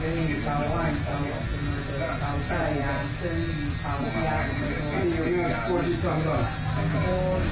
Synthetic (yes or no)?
no